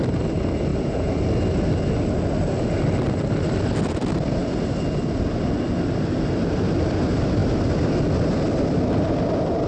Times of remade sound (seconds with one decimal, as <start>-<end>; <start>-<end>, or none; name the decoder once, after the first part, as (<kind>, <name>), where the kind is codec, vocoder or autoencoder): none

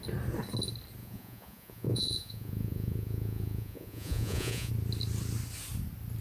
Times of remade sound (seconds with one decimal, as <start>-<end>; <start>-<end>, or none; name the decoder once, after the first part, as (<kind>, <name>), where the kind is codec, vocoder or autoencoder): 1.0-4.7 (vocoder, Vocos)